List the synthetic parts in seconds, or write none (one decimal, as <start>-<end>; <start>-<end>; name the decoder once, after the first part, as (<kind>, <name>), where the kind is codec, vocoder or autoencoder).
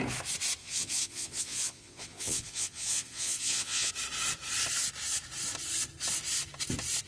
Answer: 0.6-3.9 (vocoder, Vocos)